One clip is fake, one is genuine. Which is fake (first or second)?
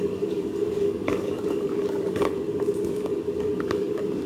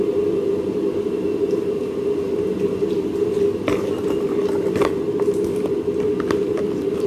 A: first